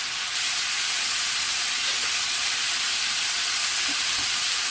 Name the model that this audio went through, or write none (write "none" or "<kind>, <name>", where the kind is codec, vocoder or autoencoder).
none